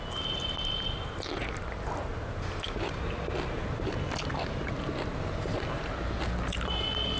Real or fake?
real